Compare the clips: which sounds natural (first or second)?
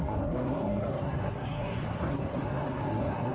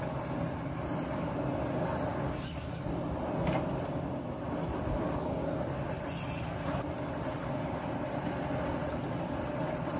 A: second